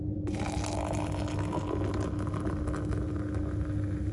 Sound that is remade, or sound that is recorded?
recorded